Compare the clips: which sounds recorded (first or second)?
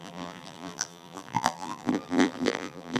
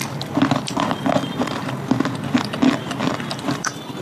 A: second